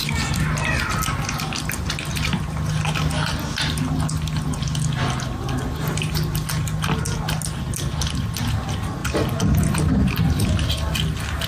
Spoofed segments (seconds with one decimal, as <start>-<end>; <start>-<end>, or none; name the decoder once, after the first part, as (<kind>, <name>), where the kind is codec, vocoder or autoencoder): none